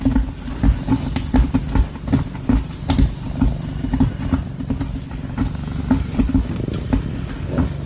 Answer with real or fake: real